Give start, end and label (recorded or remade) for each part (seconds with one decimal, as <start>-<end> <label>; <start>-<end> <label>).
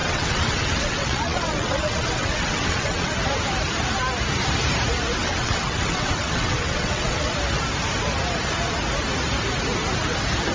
0.0-3.1 remade; 3.1-5.2 recorded; 5.2-7.3 remade; 7.3-10.5 recorded